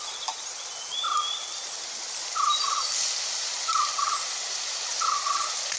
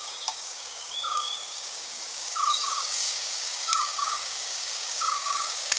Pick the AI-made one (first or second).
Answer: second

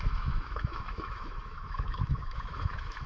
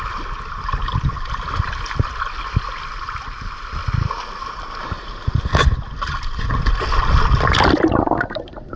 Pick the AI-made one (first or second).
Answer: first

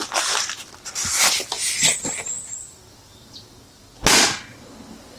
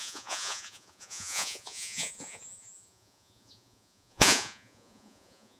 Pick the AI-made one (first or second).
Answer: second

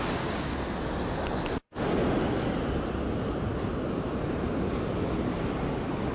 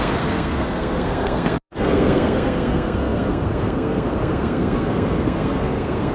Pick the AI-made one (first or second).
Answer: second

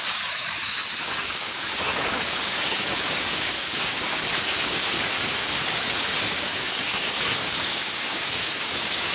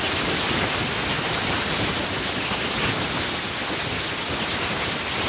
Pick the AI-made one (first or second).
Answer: first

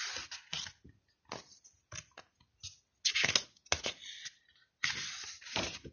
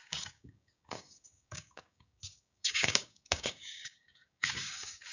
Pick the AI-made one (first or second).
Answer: second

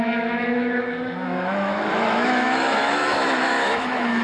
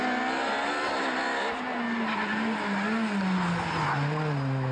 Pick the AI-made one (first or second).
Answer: first